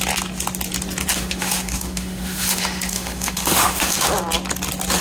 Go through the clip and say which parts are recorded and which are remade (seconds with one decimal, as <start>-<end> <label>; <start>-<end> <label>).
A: 0.0-1.1 recorded; 1.1-4.1 remade; 4.1-5.0 recorded